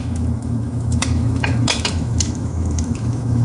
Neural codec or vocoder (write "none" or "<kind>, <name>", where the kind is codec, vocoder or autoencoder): autoencoder, DAC-VAE